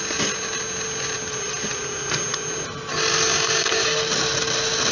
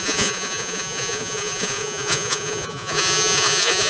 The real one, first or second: first